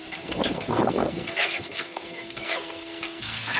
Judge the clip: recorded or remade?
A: remade